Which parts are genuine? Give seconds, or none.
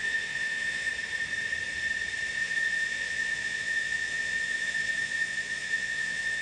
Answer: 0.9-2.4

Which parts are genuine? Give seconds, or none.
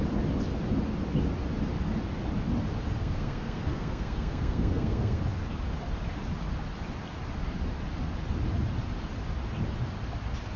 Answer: 0.0-3.0; 5.2-10.6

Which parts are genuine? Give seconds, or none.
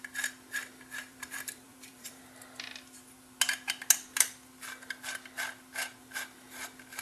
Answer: 0.0-1.1; 2.2-7.0